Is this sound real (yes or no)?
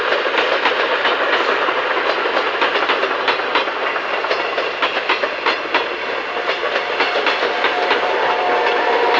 yes